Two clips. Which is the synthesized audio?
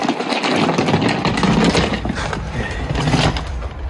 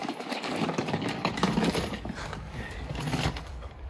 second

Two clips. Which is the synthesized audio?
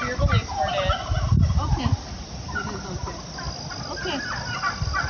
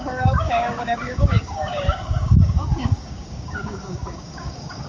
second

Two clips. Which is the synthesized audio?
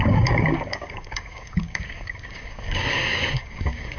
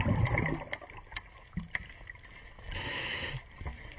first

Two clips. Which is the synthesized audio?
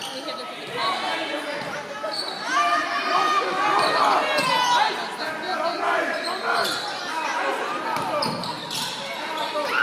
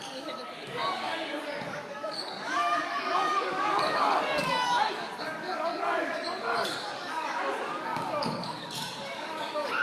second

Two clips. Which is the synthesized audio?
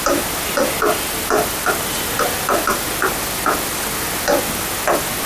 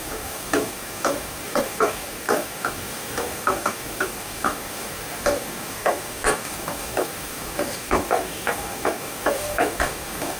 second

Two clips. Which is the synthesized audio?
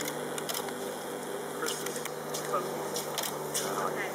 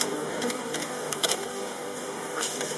second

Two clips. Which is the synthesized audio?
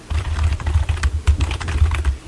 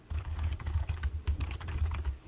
second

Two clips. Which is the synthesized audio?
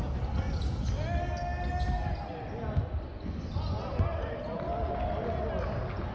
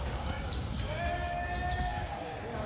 second